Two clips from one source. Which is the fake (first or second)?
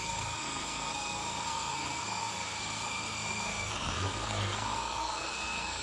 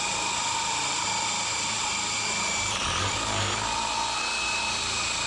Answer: first